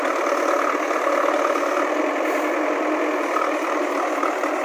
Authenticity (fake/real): real